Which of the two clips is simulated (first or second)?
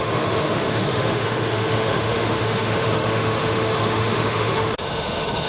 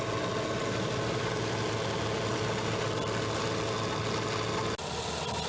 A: first